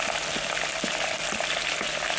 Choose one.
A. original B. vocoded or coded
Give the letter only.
A